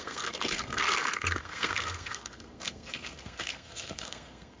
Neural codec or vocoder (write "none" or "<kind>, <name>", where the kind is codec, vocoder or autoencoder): codec, SNAC